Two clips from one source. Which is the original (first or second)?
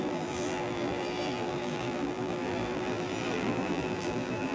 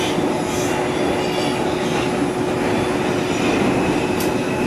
second